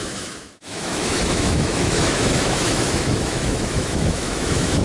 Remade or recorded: remade